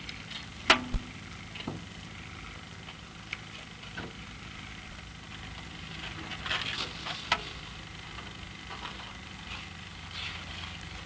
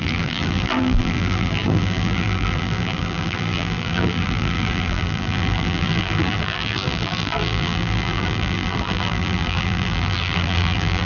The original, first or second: first